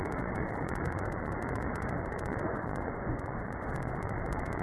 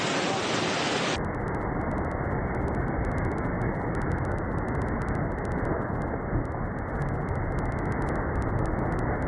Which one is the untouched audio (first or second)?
second